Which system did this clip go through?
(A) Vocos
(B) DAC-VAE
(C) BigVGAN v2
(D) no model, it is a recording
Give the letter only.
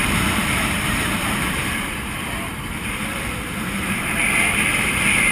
C